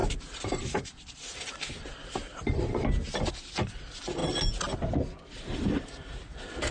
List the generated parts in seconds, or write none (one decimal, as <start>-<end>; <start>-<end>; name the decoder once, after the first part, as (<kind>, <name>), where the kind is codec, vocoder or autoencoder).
none